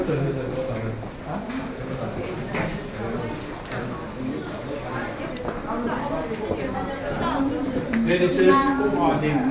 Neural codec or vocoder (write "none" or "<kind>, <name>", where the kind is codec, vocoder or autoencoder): none